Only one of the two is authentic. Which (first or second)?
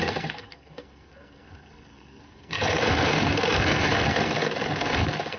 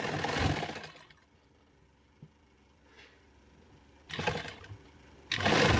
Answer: second